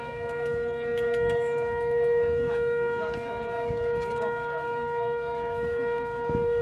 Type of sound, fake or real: fake